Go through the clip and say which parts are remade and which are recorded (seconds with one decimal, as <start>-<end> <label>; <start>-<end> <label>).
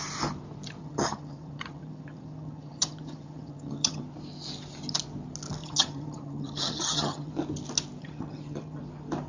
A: 0.0-0.8 recorded; 0.8-4.0 remade; 4.0-5.6 recorded; 5.6-7.3 remade; 7.3-8.0 recorded; 8.0-8.8 remade; 8.8-9.3 recorded